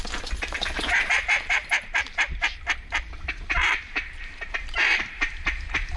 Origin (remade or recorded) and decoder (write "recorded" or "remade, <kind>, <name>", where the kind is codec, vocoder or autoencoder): remade, vocoder, BigVGAN v2